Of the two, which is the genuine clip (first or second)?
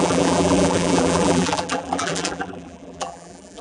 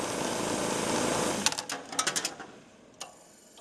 second